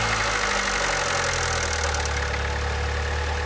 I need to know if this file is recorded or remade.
recorded